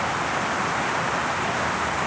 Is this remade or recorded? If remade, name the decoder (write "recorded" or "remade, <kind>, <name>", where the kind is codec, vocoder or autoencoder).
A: recorded